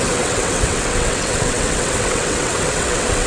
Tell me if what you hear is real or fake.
fake